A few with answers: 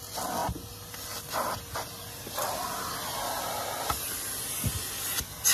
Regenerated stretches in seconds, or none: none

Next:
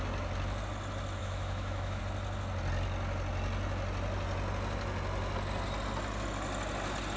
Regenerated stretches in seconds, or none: 1.2-2.0 (autoencoder, DAC-VAE)

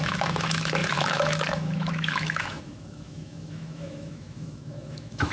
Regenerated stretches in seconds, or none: 0.0-5.3 (autoencoder, DAC-VAE)

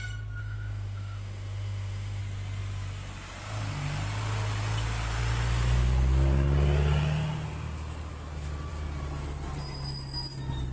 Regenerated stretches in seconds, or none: 0.4-2.2 (autoencoder, DAC-VAE)

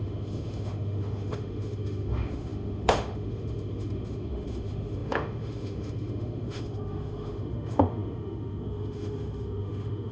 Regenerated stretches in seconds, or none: 0.0-10.1 (autoencoder, DAC-VAE)

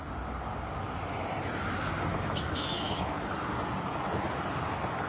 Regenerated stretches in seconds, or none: 2.1-3.3 (autoencoder, DAC-VAE)

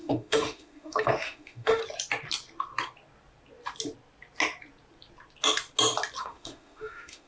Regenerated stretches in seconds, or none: 0.0-1.8 (autoencoder, DAC-VAE); 6.2-7.3

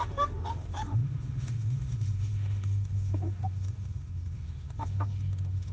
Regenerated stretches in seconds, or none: 0.0-5.7 (autoencoder, DAC-VAE)